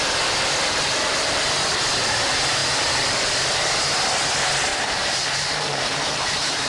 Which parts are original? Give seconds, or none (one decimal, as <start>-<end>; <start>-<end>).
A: 0.0-4.7